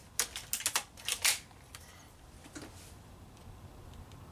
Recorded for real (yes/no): yes